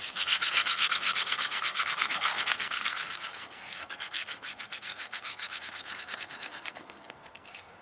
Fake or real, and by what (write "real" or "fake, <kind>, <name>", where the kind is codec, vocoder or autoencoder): fake, codec, SNAC